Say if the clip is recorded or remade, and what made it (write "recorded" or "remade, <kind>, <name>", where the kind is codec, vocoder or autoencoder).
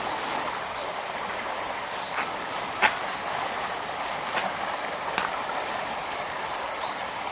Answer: recorded